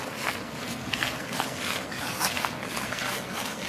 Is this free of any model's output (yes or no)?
no